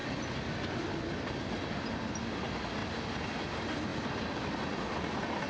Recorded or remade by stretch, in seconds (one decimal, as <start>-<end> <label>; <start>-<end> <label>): 0.0-5.5 recorded